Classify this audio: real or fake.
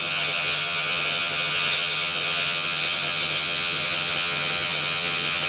fake